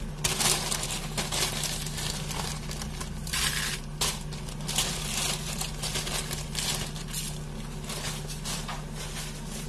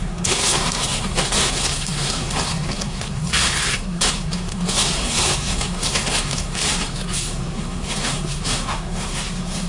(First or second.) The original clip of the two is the first